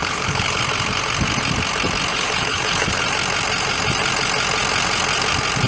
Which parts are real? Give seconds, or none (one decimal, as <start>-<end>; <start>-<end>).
0.6-2.1; 3.0-5.7